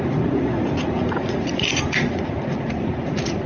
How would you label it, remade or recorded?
remade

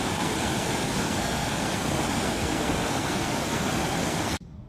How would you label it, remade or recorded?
remade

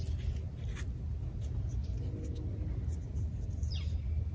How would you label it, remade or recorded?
recorded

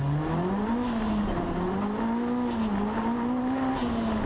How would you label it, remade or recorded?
recorded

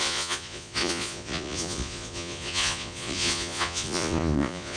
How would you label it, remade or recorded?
remade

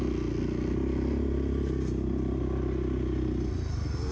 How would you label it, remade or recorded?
recorded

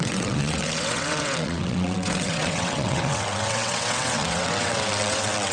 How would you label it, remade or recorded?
remade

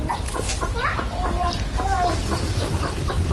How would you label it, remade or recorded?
remade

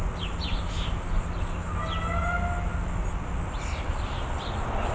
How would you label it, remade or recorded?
recorded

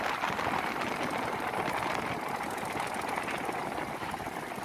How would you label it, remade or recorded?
recorded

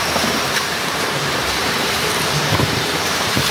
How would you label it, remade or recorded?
remade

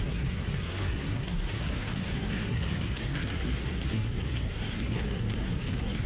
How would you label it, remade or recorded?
remade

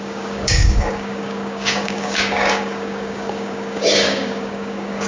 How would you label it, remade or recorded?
remade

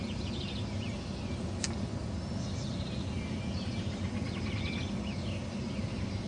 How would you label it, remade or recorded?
recorded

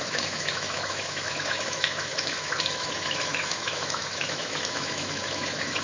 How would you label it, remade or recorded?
remade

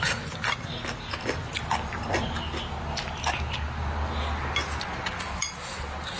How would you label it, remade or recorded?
recorded